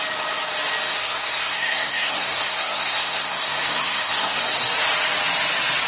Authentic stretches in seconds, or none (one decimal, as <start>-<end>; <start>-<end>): 0.0-0.9; 4.4-5.9